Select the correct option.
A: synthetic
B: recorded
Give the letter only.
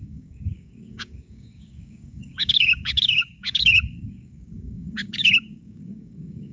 A